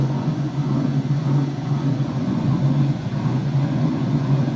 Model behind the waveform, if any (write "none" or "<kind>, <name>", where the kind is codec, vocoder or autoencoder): vocoder, Vocos